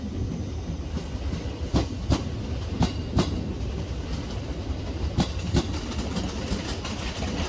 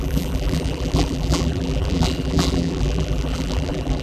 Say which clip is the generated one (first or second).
second